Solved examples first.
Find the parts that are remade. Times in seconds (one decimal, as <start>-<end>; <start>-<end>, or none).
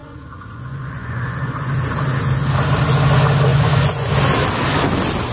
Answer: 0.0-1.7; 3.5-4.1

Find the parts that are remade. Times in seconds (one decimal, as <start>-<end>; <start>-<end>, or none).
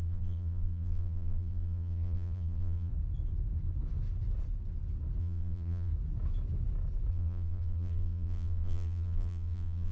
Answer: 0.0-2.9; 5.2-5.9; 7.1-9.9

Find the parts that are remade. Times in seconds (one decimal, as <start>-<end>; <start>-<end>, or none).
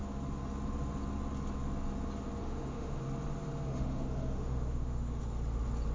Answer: 2.4-3.0; 3.7-5.2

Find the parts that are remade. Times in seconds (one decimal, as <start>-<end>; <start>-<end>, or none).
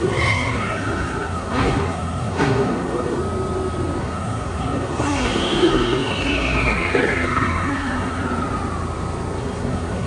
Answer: 0.0-3.2; 4.0-8.2; 9.4-10.1